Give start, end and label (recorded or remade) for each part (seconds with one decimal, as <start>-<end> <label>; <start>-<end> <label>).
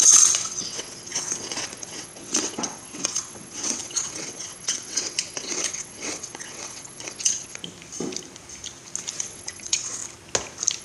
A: 0.0-7.6 remade; 7.6-9.1 recorded; 9.1-10.0 remade; 10.0-10.8 recorded